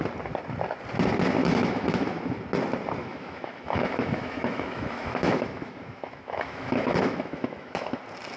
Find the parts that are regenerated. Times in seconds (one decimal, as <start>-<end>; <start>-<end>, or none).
1.4-2.2; 3.0-8.0